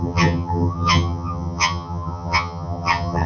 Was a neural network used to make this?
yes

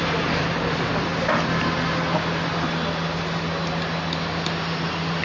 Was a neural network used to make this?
no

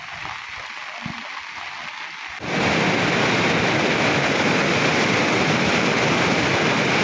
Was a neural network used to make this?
no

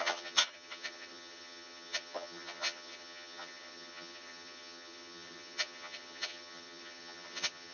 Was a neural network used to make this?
yes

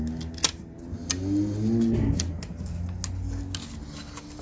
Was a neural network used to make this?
no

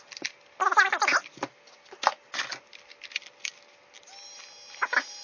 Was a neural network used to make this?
no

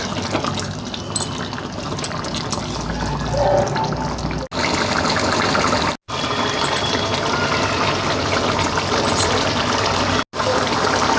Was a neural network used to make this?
no